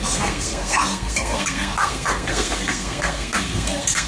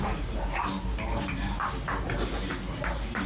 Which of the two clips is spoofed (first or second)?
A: first